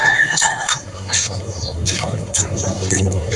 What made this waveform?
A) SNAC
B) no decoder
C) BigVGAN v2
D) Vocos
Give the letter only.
A